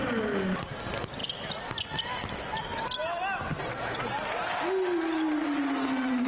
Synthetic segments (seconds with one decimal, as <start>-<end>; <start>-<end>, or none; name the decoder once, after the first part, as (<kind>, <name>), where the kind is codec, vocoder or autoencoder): none